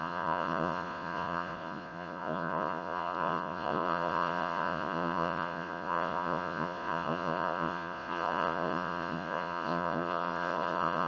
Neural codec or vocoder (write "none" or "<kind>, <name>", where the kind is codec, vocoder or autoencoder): vocoder, Vocos